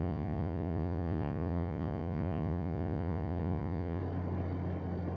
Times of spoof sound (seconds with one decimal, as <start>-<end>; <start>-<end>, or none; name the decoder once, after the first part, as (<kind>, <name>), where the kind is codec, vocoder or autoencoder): 0.0-4.0 (vocoder, Vocos)